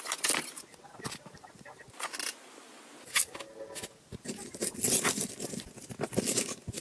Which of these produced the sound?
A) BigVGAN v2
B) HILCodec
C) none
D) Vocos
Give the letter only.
C